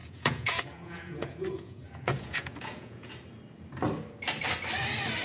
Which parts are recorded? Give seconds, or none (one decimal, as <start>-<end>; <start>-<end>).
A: 3.1-5.2